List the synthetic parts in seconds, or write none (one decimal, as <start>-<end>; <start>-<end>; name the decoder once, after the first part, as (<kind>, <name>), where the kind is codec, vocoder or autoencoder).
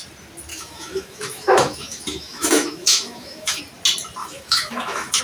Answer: 0.5-3.6 (autoencoder, DAC-VAE); 4.2-5.2